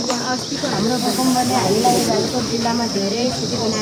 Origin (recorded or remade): remade